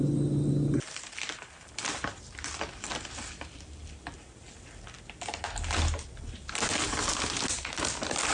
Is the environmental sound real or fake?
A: real